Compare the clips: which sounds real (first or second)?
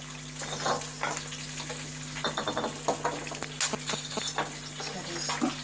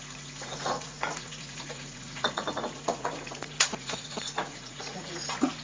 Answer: first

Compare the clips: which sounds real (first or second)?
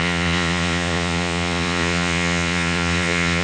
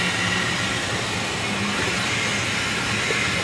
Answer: second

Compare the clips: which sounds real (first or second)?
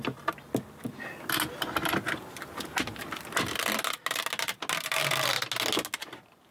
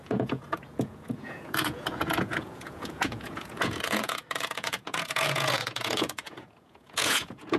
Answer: first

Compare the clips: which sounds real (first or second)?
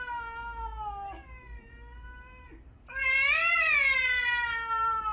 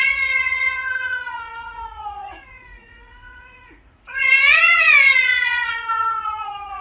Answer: first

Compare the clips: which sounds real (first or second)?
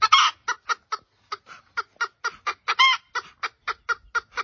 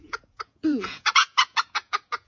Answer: first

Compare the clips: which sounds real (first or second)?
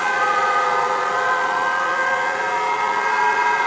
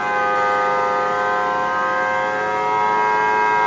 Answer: second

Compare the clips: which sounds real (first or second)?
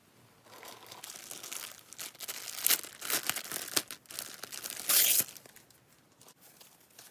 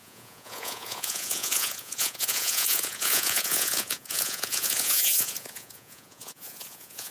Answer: first